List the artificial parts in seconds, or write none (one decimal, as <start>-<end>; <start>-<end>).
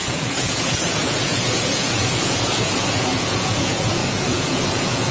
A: 0.0-5.1